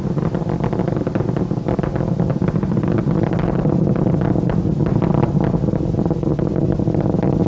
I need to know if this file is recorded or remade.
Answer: recorded